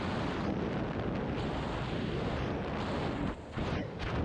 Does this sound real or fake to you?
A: real